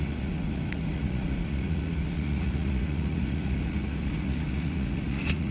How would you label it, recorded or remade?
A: remade